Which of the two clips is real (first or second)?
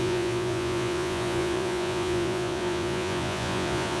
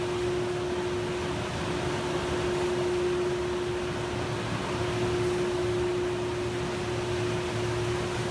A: second